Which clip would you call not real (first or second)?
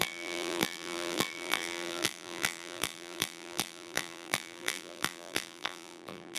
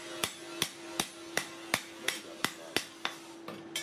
first